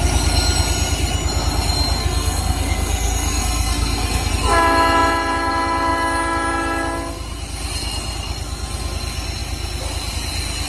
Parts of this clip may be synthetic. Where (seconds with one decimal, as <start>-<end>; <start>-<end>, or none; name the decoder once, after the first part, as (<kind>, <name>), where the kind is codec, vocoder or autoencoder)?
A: 2.0-4.3 (codec, SNAC)